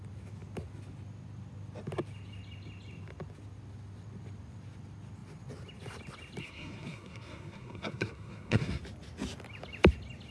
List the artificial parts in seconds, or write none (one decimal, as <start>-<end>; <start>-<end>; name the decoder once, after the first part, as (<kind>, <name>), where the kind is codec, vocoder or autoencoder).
6.4-8.8 (codec, SNAC)

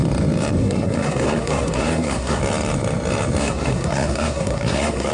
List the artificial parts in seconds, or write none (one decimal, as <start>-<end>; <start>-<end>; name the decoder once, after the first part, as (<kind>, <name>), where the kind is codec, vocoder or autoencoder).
0.6-2.4 (codec, SNAC); 3.4-5.1

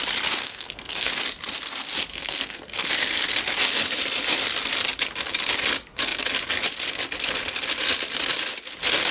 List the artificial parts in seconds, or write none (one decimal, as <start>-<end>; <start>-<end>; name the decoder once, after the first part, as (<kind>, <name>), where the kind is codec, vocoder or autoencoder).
0.4-1.1 (codec, SNAC); 2.1-2.9

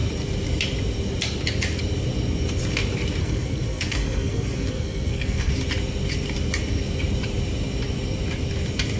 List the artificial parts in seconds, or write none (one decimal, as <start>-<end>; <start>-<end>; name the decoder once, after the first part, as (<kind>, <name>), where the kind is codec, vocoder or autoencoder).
3.2-5.5 (codec, SNAC)

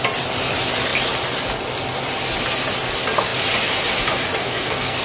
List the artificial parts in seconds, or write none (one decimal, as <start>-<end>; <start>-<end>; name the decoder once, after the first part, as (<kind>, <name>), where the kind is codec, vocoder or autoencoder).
4.4-5.0 (codec, SNAC)

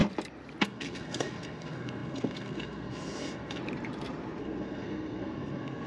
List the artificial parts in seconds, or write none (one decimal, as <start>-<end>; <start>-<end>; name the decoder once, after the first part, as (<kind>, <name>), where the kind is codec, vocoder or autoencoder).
0.6-3.6 (codec, SNAC); 4.4-5.9